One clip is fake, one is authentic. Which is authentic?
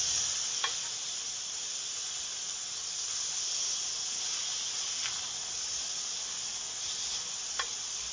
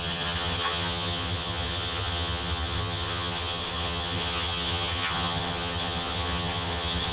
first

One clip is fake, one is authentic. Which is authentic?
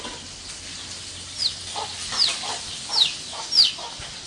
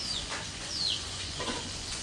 first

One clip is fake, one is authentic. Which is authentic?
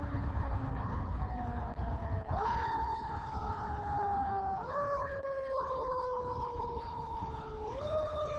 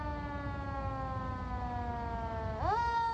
second